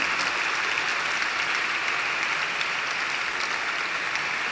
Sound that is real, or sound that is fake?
real